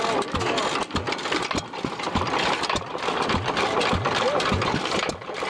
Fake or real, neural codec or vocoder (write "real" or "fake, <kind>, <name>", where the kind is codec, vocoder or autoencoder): real